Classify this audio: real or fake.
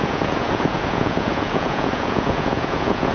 fake